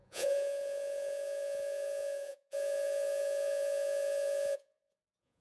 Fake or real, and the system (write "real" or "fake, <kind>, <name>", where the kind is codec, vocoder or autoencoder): fake, vocoder, Vocos